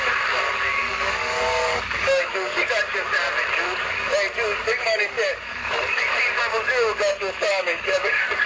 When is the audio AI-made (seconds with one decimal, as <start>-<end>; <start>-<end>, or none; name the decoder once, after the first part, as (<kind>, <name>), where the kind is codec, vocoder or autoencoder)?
0.8-2.7 (codec, DAC); 4.6-6.0; 7.2-8.5

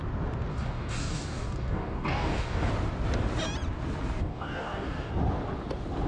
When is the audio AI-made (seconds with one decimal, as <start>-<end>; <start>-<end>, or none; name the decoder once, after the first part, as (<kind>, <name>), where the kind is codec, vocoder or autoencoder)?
0.5-2.7 (codec, DAC); 4.2-5.1

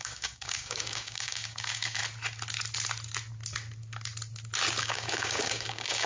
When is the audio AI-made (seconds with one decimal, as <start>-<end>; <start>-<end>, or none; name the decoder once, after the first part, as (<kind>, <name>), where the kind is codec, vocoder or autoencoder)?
0.0-2.0 (codec, DAC); 4.8-6.1